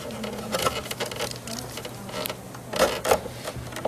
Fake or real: real